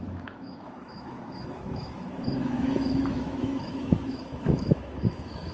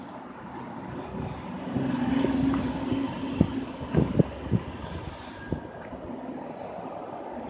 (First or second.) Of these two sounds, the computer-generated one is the first